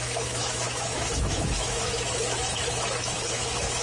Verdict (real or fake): fake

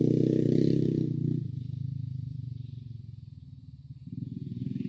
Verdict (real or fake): real